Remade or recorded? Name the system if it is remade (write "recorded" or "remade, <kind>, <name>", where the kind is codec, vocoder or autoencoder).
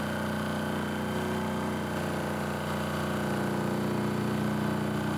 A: recorded